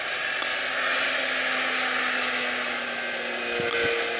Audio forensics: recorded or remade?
recorded